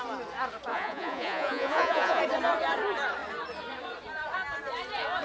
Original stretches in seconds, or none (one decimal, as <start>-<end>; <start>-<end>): 0.0-0.7; 2.2-5.2

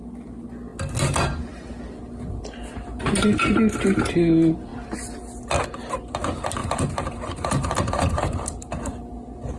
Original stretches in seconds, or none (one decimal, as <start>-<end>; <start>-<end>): 0.0-6.6; 8.8-9.6

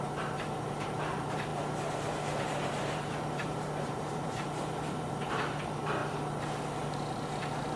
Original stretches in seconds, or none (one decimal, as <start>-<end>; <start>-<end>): 1.5-2.4; 6.0-7.8